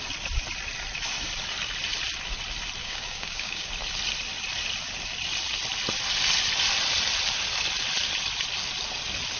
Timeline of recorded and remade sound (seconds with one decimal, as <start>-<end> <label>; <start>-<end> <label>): 0.0-2.8 recorded; 2.8-3.7 remade; 3.7-9.4 recorded